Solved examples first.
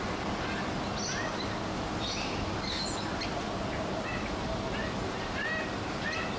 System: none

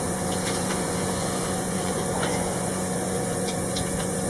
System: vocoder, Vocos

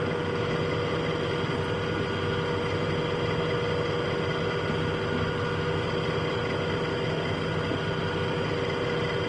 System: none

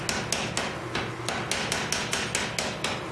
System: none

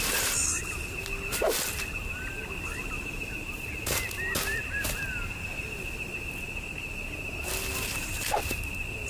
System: none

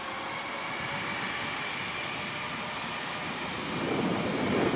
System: none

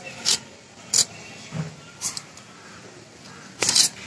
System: none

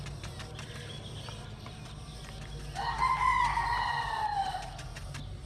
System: none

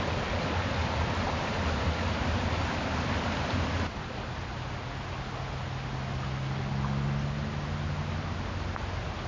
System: none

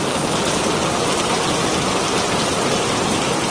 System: none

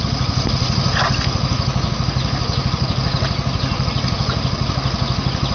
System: none